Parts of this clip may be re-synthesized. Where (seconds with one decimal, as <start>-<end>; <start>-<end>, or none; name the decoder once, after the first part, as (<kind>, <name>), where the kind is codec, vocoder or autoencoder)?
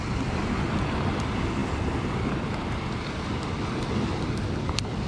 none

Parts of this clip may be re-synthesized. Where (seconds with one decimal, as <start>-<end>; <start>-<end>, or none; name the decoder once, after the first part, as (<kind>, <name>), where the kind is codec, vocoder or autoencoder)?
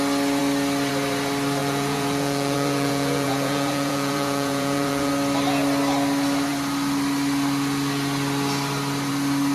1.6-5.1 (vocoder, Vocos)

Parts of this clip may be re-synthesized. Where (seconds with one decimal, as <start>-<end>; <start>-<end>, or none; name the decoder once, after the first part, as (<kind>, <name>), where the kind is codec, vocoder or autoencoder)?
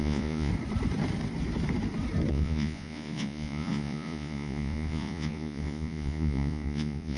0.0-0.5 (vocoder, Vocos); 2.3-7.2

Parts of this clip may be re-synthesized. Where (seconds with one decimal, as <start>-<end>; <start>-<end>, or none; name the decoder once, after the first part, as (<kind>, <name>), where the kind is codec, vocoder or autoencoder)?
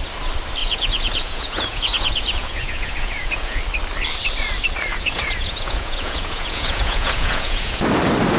0.6-3.6 (vocoder, Vocos); 4.9-7.8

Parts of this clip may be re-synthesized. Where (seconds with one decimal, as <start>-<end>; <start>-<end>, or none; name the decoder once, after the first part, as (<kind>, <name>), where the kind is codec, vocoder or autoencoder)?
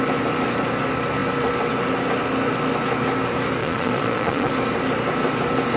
3.6-4.5 (vocoder, Vocos)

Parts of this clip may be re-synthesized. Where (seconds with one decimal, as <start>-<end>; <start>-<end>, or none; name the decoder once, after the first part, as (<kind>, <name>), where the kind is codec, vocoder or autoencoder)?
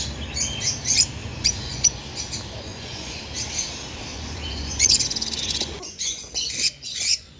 1.2-2.0 (vocoder, Vocos); 2.7-3.2; 4.1-7.4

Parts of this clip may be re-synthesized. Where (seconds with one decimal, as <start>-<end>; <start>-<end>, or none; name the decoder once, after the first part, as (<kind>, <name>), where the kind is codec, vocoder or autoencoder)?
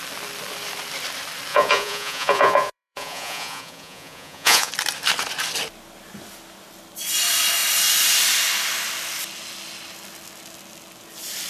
1.5-4.7 (vocoder, Vocos)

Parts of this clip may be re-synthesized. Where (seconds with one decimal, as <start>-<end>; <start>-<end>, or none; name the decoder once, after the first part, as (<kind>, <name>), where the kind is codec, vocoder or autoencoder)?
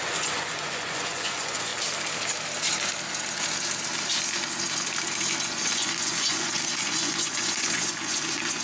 0.0-1.7 (vocoder, Vocos); 5.4-8.6